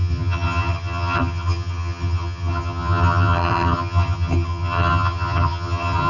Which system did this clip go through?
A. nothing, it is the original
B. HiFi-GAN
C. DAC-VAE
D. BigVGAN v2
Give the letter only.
B